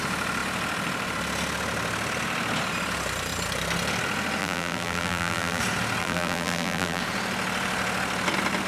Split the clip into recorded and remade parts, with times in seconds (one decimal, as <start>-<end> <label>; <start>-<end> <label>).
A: 0.0-4.4 recorded; 4.4-5.6 remade; 5.6-6.0 recorded; 6.0-7.0 remade; 7.0-8.7 recorded

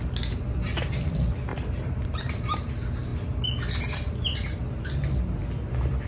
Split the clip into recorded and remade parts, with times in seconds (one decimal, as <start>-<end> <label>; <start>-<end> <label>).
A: 0.0-1.5 recorded; 1.5-2.7 remade; 2.7-6.1 recorded